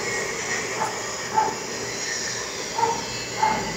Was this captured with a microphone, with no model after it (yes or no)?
yes